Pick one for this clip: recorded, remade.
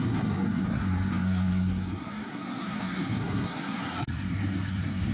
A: remade